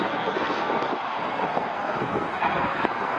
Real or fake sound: fake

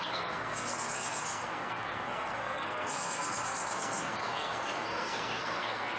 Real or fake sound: fake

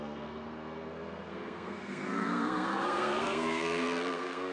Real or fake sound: fake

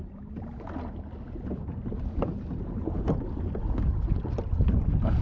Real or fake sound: real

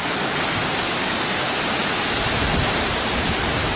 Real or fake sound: real